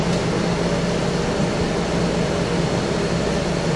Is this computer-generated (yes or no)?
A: no